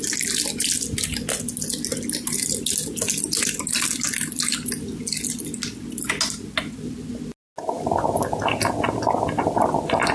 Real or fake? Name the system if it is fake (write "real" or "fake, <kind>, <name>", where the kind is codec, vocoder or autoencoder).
real